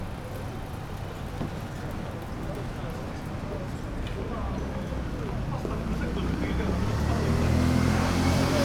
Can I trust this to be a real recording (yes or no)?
yes